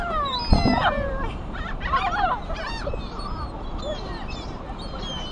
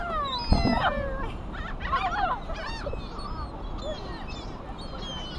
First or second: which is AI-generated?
first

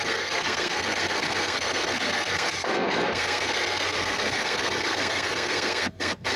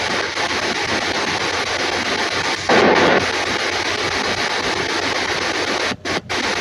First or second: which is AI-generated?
first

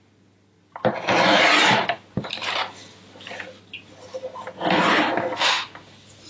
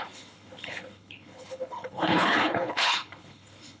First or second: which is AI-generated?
second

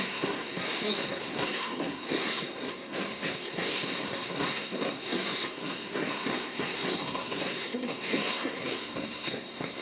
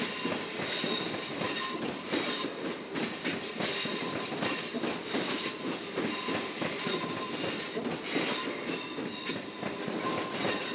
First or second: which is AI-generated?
first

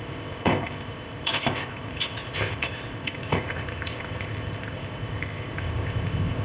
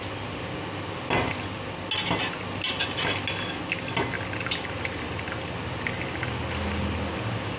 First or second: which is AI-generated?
first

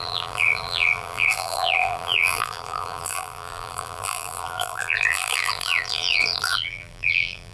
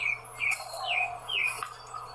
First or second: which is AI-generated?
first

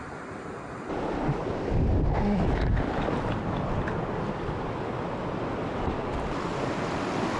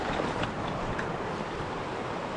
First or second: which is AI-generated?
second